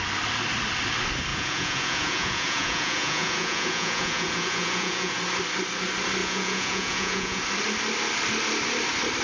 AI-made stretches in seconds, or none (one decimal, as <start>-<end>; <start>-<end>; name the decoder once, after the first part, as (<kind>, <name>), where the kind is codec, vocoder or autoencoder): 1.3-5.2 (vocoder, Vocos); 6.2-7.4